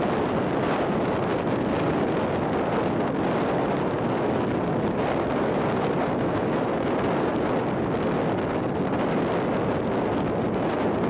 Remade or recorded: recorded